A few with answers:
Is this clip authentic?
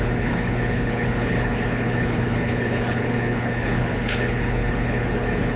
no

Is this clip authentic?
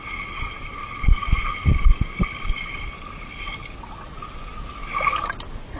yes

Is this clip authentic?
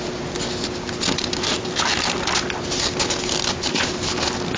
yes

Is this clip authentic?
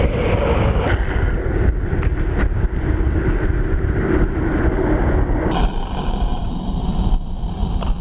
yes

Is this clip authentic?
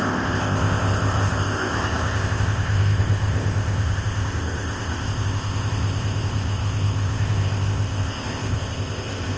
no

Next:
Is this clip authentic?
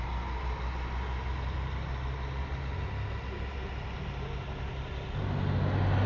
yes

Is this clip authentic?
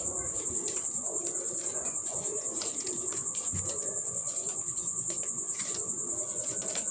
no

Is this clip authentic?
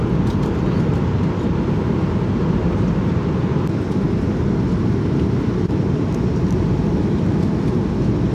yes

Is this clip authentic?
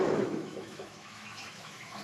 no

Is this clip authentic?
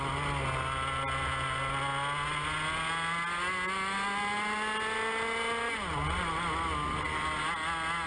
yes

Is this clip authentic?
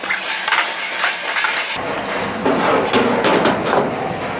yes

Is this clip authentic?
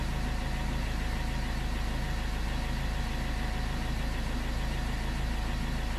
yes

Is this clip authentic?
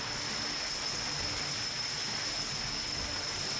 yes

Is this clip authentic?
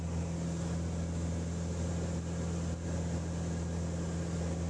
yes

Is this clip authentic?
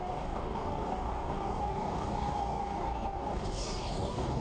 no